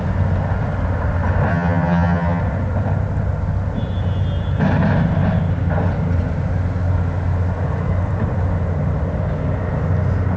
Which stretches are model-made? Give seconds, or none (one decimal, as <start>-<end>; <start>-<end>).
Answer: 1.5-2.4